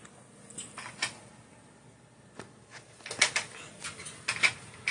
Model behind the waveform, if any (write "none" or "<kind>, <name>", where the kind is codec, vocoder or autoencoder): none